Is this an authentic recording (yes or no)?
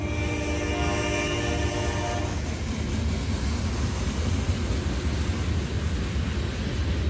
yes